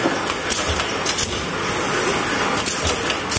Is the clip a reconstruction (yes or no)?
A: no